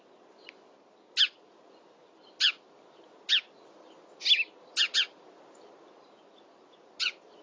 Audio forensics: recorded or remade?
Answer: recorded